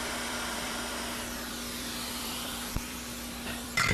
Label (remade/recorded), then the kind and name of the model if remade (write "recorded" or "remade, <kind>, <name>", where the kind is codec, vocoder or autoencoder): remade, vocoder, BigVGAN v2